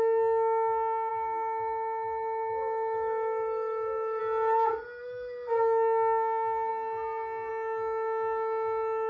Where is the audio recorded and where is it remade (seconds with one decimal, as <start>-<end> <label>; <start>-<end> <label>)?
0.0-1.1 recorded; 1.1-4.2 remade; 4.2-9.1 recorded